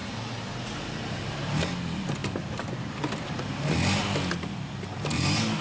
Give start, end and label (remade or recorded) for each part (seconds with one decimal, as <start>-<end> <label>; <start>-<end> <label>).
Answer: 0.0-1.6 remade; 1.6-5.6 recorded